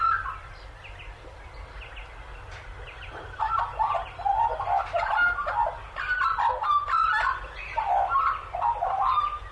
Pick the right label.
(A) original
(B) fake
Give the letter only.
A